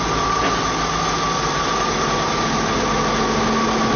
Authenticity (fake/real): real